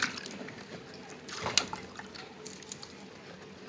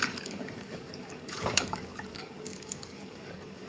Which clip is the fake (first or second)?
second